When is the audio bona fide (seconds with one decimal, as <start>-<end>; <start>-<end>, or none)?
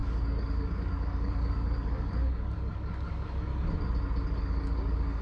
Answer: 3.5-4.4